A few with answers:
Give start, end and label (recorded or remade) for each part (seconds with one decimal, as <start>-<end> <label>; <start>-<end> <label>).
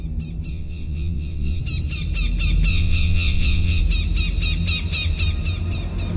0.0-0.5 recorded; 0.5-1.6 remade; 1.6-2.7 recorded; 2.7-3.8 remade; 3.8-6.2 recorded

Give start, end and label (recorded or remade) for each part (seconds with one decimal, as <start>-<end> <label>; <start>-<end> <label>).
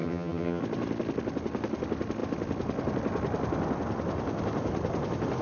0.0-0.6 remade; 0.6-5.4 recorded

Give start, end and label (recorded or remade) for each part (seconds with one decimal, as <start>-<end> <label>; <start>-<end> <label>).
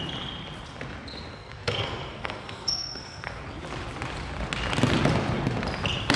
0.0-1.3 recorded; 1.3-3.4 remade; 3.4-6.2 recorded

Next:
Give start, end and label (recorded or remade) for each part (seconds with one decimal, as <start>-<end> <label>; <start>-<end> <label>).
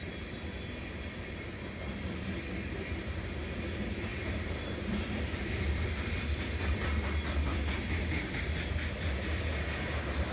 0.0-4.1 recorded; 4.1-5.9 remade; 5.9-10.3 recorded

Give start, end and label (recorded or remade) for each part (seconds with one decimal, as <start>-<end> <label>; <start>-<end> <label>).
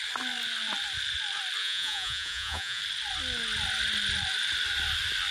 0.0-1.6 recorded; 1.6-2.8 remade; 2.8-5.3 recorded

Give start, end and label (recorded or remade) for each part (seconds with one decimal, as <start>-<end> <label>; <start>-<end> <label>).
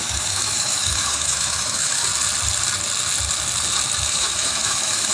0.0-2.1 remade; 2.1-4.1 recorded; 4.1-5.1 remade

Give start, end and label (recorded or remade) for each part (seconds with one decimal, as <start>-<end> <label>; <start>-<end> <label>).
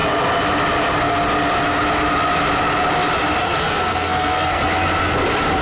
0.0-3.4 recorded; 3.4-4.6 remade; 4.6-5.6 recorded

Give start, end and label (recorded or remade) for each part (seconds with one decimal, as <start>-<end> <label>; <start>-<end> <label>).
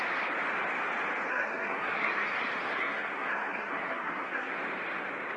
0.0-1.3 recorded; 1.3-4.5 remade; 4.5-5.4 recorded